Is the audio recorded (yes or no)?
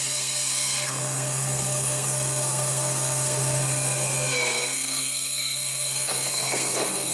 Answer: no